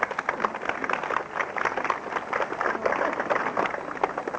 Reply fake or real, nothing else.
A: real